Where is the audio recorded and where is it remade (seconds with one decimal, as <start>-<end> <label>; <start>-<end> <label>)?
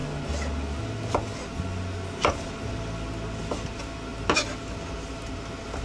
0.0-5.8 recorded